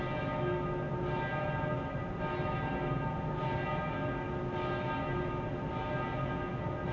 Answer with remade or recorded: recorded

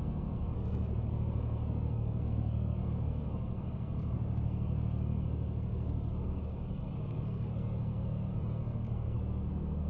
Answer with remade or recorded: remade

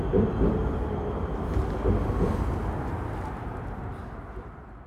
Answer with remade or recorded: recorded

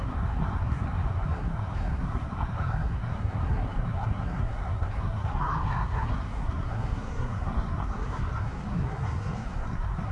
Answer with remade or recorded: remade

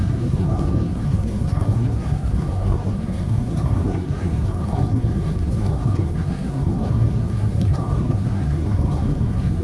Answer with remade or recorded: remade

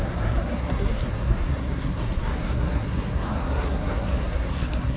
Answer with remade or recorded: remade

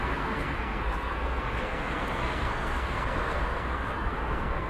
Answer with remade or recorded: remade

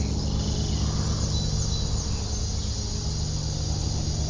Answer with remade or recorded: recorded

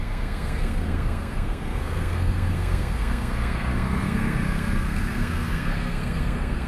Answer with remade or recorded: remade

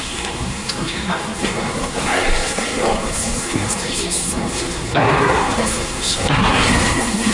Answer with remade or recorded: remade